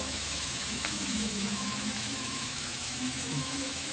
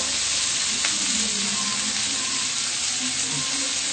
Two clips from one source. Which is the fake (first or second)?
first